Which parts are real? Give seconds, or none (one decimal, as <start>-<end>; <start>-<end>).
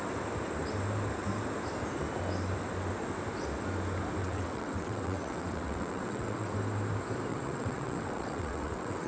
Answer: 0.0-4.2; 6.5-7.3